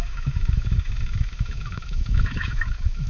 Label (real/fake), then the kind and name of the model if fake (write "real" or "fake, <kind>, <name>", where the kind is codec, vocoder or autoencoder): fake, autoencoder, DAC-VAE